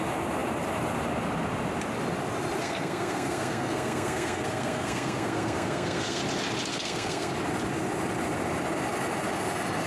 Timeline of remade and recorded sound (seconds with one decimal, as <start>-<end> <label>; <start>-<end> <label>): 0.0-2.6 recorded; 2.6-6.2 remade; 6.2-6.7 recorded; 6.7-7.3 remade; 7.3-9.9 recorded